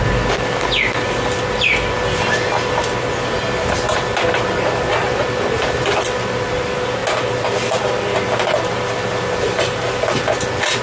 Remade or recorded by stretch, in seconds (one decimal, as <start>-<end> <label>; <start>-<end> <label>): 0.0-10.8 recorded